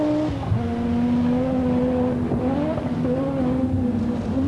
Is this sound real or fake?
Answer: real